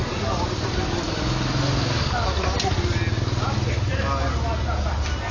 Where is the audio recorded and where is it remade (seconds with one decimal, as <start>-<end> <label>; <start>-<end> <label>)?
0.0-5.3 recorded